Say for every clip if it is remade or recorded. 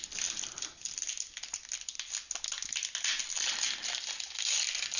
recorded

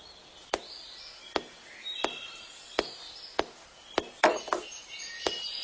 recorded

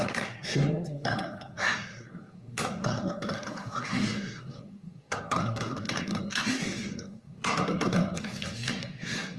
remade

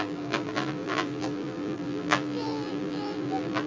remade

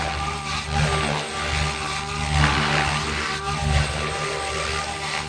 recorded